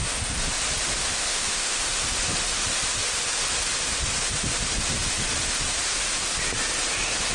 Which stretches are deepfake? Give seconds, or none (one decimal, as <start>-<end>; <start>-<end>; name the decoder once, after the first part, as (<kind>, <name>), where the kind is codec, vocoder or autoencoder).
1.0-1.9 (autoencoder, DAC-VAE)